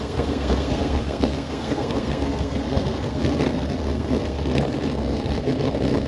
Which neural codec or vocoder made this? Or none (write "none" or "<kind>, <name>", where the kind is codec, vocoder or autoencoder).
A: codec, SNAC